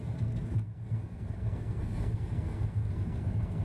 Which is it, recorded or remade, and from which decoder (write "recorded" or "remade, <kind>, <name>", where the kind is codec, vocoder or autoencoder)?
remade, codec, SNAC